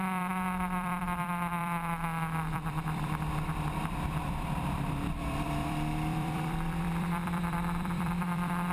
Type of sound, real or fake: fake